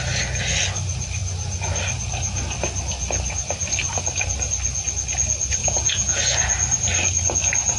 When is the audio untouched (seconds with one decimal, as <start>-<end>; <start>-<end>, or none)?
0.0-5.6; 6.2-7.8